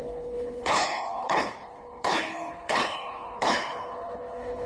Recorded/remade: remade